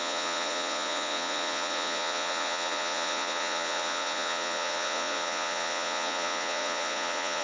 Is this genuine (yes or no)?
no